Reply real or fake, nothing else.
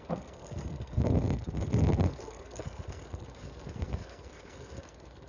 fake